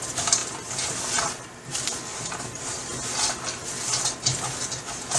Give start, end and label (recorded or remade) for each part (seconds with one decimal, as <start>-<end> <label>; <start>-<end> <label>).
0.0-2.1 recorded; 2.1-2.9 remade; 2.9-5.2 recorded